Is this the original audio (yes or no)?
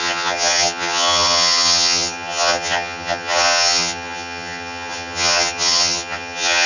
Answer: no